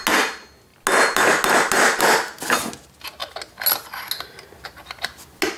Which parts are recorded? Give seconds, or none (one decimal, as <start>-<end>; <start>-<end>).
0.0-5.6